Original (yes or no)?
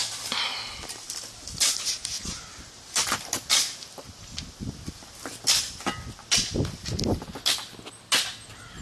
yes